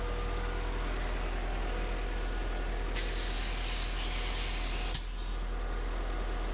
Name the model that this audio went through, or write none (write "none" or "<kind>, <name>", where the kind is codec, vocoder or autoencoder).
none